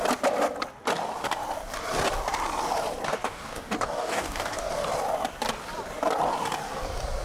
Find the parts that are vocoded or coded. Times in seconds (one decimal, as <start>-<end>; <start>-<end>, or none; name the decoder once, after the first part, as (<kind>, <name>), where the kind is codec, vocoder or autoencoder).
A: 3.1-4.7 (codec, DAC)